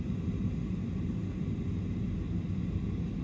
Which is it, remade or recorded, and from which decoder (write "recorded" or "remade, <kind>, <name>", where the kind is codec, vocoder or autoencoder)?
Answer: recorded